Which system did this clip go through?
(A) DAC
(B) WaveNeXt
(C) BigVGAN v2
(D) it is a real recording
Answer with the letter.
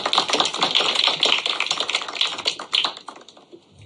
D